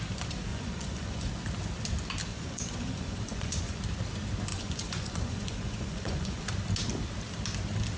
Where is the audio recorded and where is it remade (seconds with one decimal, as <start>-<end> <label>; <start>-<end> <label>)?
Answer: 0.0-0.5 recorded; 0.5-1.3 remade; 1.3-2.3 recorded; 2.3-3.8 remade; 3.8-4.5 recorded; 4.5-6.4 remade; 6.4-8.0 recorded

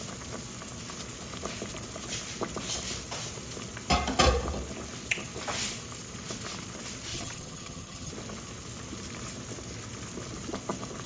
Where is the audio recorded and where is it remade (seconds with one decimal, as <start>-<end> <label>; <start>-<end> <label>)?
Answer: 0.0-7.1 recorded; 7.1-8.1 remade; 8.1-11.1 recorded

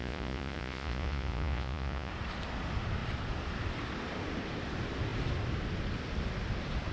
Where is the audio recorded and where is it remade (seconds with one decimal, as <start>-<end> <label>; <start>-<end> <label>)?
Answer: 0.0-2.1 remade; 2.1-6.9 recorded

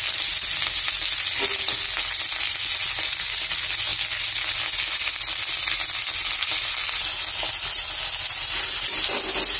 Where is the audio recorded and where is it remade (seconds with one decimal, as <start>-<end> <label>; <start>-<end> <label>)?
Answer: 0.0-9.6 recorded